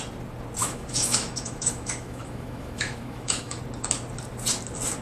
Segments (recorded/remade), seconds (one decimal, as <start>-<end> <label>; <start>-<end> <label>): 0.0-0.6 recorded; 0.6-3.6 remade; 3.6-5.0 recorded